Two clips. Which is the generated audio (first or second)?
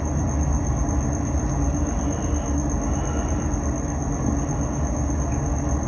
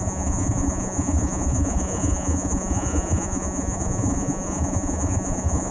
second